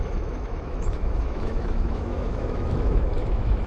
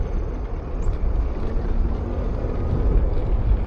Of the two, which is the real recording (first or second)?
second